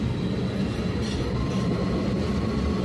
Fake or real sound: real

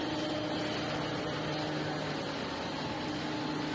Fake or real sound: real